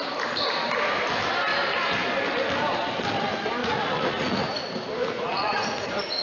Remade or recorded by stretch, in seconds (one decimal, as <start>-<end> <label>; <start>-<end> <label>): 0.0-3.6 recorded; 3.6-4.6 remade; 4.6-5.0 recorded; 5.0-6.2 remade